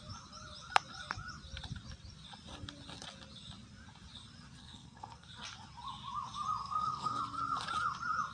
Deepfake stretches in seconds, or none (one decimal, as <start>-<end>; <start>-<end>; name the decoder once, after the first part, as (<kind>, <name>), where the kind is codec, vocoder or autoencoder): 4.6-5.3 (codec, SNAC); 6.6-7.2